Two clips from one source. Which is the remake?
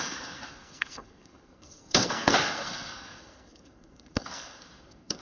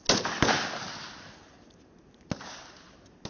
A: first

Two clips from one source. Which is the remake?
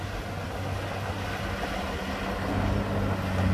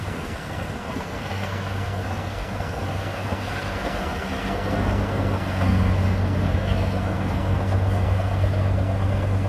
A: second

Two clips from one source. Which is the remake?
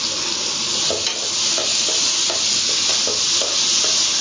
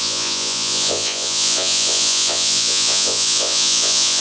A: second